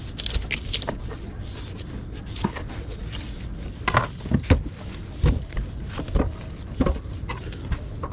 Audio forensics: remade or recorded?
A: recorded